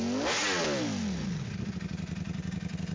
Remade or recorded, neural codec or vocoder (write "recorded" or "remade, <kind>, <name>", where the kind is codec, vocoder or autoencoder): recorded